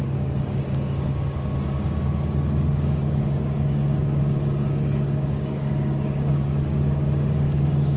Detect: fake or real fake